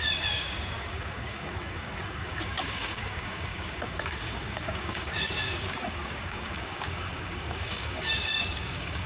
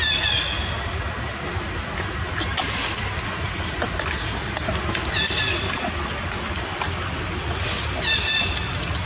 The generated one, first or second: first